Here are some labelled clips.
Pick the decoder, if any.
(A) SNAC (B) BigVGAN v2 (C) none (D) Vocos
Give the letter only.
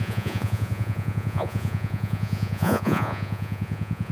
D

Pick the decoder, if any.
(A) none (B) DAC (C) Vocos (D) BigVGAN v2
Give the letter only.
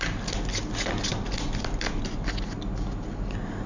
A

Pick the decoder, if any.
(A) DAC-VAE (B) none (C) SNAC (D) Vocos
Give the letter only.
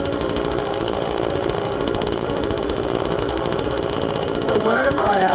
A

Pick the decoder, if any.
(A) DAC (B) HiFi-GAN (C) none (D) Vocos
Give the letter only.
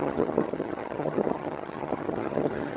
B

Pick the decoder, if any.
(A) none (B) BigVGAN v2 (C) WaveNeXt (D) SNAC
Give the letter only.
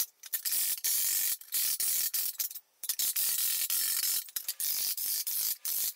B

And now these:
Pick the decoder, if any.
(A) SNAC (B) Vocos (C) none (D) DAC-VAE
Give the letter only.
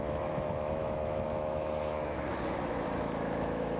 D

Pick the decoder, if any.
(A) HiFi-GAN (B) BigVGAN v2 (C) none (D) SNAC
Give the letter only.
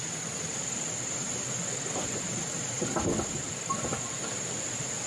B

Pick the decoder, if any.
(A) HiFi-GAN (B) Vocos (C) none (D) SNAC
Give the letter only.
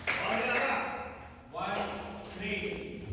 C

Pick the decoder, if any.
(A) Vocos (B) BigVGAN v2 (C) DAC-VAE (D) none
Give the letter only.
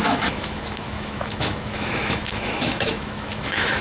C